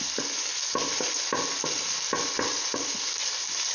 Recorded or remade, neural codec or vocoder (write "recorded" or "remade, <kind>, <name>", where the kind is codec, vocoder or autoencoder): recorded